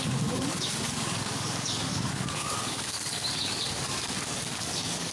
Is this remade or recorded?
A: remade